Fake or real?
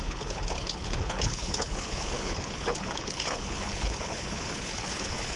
fake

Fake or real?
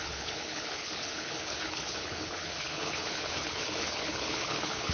fake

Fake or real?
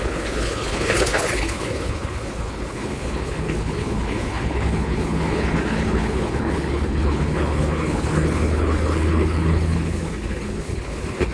fake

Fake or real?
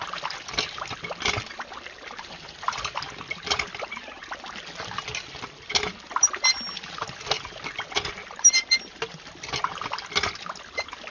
real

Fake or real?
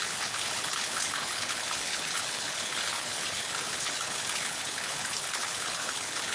fake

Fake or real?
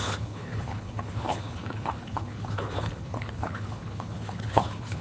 fake